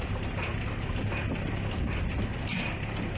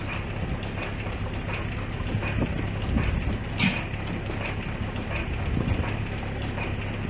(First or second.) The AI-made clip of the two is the first